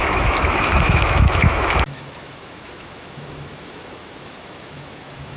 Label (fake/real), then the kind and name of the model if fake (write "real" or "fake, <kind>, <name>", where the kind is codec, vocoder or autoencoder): fake, autoencoder, DAC-VAE